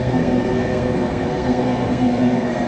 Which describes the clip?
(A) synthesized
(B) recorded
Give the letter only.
A